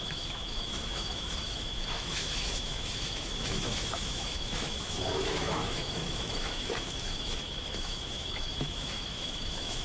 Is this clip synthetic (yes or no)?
yes